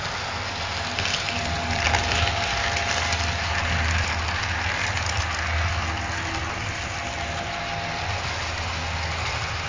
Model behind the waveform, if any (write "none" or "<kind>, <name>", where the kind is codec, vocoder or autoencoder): none